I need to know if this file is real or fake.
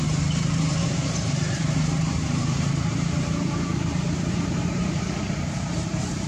fake